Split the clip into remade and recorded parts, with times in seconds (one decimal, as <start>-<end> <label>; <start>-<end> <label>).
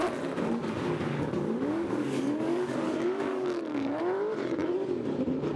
0.0-0.6 recorded; 0.6-4.0 remade; 4.0-5.6 recorded